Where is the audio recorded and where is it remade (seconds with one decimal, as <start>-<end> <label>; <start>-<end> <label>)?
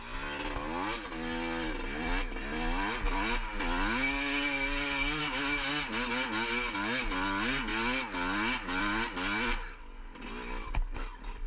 0.0-5.2 recorded; 5.2-5.7 remade; 5.7-11.5 recorded